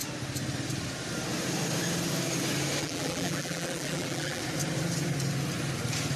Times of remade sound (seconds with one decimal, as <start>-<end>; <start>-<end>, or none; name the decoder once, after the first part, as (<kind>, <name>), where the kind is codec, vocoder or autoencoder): 2.8-4.4 (vocoder, BigVGAN v2)